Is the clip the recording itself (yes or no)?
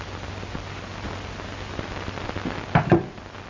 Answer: yes